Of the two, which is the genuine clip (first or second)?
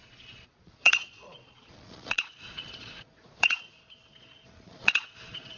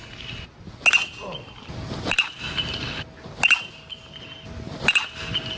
second